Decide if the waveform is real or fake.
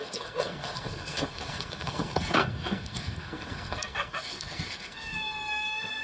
fake